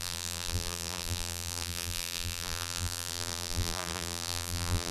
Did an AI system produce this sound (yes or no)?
yes